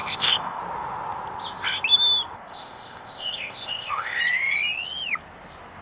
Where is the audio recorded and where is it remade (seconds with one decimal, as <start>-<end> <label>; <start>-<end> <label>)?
0.0-0.6 remade; 0.6-2.5 recorded; 2.5-4.2 remade; 4.2-5.8 recorded